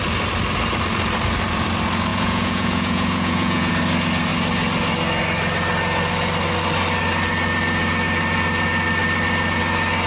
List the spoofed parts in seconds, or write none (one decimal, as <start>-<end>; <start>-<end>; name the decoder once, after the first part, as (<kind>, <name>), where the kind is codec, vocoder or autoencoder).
2.1-3.7 (vocoder, Vocos)